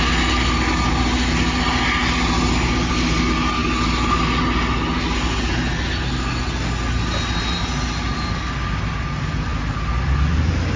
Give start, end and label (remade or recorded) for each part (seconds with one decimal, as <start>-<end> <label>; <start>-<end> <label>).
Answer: 0.0-10.8 recorded